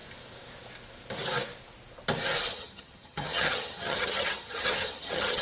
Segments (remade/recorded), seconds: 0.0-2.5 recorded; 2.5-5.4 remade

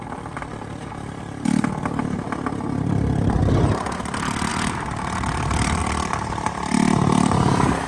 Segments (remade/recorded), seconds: 0.0-3.4 recorded; 3.4-4.0 remade; 4.0-4.5 recorded; 4.5-5.8 remade; 5.8-7.9 recorded

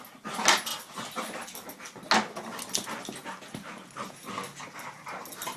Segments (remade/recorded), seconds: 0.0-5.6 recorded